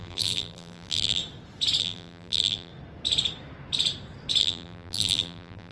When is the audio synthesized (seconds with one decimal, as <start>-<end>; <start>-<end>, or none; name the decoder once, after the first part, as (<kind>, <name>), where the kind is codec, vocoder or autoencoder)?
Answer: 0.0-1.2 (vocoder, BigVGAN v2); 1.8-2.7; 4.4-5.7

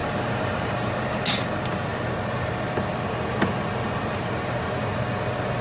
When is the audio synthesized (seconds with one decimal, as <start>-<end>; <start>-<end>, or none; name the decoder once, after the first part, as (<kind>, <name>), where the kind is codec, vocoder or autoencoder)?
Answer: 0.0-1.2 (vocoder, BigVGAN v2)

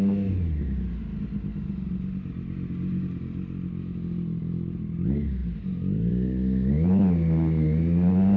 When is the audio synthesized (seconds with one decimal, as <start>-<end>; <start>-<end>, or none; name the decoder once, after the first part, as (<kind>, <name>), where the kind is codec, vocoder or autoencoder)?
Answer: 5.4-7.0 (vocoder, BigVGAN v2)

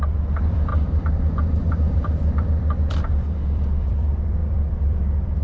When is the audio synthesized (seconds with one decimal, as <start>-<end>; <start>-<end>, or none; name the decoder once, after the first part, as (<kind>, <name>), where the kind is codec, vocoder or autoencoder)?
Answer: 0.0-5.4 (vocoder, BigVGAN v2)

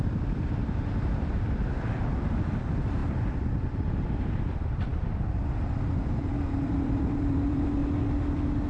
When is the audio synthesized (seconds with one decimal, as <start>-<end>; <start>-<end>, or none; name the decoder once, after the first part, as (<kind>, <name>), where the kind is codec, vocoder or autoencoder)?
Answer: 0.0-3.0 (vocoder, BigVGAN v2); 4.0-7.8

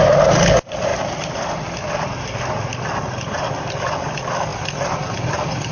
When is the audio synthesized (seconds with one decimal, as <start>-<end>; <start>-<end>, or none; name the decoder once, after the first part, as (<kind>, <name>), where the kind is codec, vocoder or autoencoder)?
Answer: 0.9-2.5 (vocoder, BigVGAN v2); 4.5-5.7

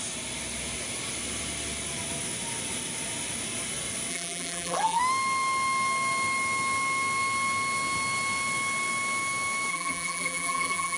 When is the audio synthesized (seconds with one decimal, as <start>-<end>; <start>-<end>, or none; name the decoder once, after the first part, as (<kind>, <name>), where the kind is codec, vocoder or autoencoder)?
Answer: 4.1-5.0 (vocoder, BigVGAN v2); 9.7-11.0